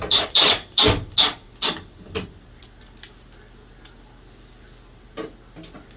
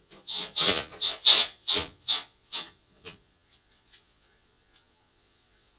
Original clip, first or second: first